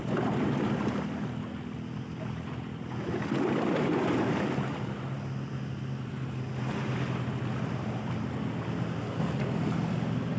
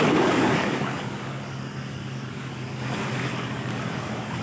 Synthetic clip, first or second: second